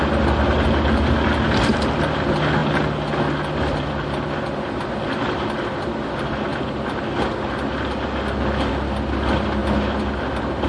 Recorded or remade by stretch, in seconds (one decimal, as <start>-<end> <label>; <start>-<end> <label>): 0.0-10.7 recorded